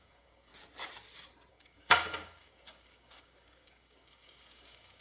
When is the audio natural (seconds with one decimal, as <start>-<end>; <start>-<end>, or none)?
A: 0.5-1.5